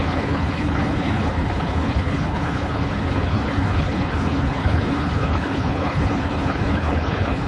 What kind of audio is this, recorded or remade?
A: remade